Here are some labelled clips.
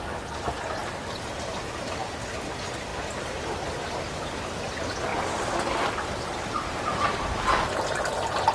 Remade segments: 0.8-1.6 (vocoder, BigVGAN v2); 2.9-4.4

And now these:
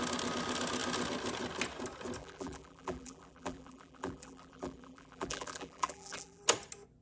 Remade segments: 2.2-6.4 (vocoder, BigVGAN v2)

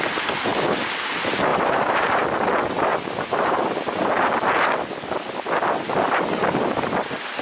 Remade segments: 1.5-2.2 (vocoder, BigVGAN v2); 2.9-3.6

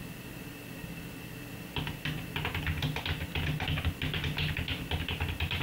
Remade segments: none